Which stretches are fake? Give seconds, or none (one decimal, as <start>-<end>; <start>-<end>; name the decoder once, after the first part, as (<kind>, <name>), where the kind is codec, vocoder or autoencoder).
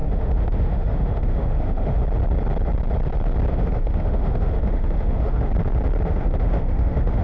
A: 0.0-2.0 (autoencoder, DAC-VAE); 3.5-5.5; 6.1-7.2